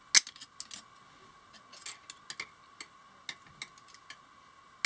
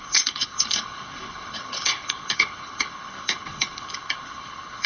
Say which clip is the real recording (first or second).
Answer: first